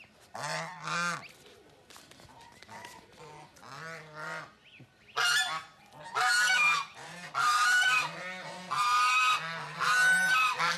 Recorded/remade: recorded